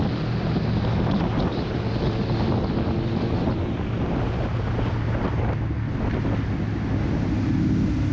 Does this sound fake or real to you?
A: real